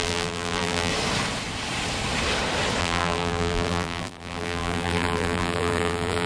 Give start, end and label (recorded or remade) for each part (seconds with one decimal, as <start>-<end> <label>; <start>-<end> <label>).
0.0-0.9 remade; 0.9-2.8 recorded; 2.8-6.3 remade